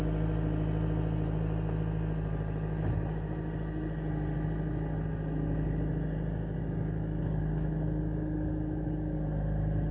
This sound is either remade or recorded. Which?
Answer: recorded